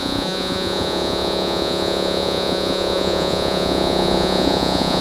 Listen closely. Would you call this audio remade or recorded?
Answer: remade